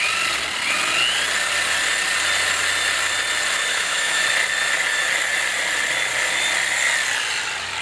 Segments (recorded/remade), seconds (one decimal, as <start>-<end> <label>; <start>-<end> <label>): 0.0-3.7 recorded; 3.7-4.2 remade; 4.2-7.8 recorded